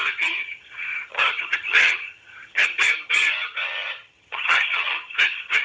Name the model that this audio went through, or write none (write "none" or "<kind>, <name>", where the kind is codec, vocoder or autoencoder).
vocoder, HiFi-GAN